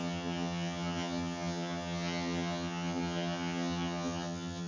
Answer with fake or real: fake